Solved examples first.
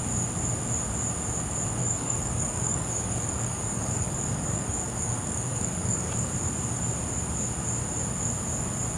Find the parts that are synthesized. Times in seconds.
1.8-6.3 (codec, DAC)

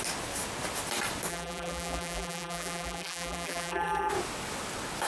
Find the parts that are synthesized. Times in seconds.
1.3-4.1 (vocoder, BigVGAN v2)

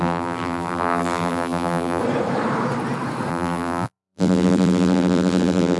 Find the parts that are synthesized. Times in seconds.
0.0-2.0 (vocoder, BigVGAN v2); 3.3-5.8